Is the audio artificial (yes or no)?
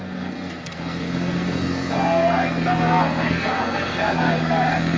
yes